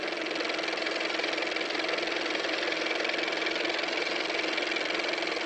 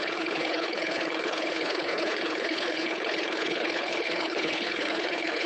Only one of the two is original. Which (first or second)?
first